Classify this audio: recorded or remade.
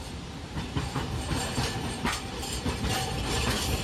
remade